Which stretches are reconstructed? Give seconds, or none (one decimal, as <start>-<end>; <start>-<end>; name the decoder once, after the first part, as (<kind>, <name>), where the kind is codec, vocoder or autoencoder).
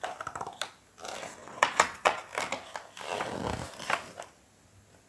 1.4-2.2 (vocoder, Vocos)